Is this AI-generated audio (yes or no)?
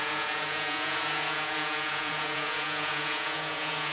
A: yes